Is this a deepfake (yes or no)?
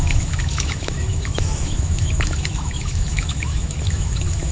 yes